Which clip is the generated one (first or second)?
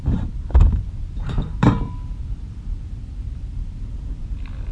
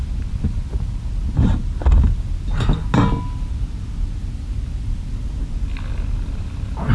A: first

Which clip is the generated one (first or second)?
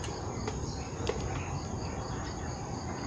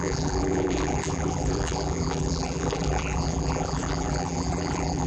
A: second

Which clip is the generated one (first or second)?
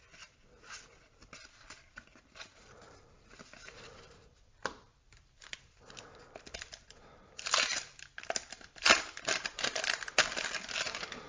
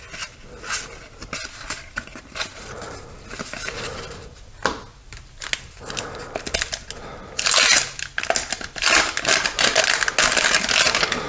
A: first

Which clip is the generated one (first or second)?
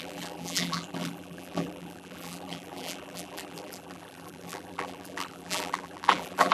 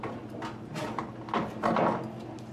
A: first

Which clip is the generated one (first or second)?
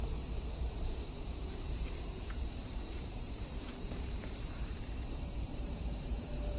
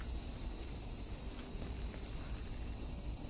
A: first